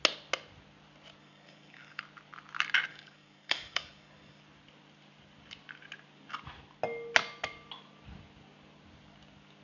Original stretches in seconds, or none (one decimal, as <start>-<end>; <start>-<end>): 0.0-1.2; 2.0-2.9; 4.4-9.6